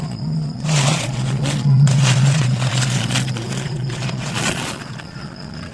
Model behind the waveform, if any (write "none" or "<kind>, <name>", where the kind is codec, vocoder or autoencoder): vocoder, Vocos